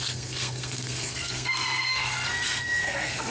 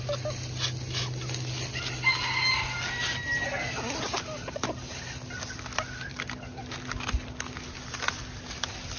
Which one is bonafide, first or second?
second